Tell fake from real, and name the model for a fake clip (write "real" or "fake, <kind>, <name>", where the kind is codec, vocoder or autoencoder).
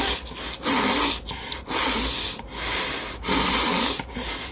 real